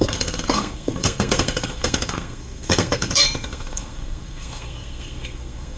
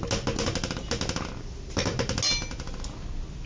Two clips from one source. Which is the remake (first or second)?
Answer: first